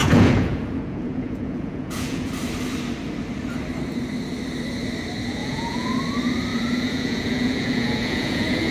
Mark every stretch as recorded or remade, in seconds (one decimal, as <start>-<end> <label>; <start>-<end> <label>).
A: 0.0-2.3 remade; 2.3-5.4 recorded; 5.4-5.9 remade; 5.9-6.5 recorded; 6.5-8.7 remade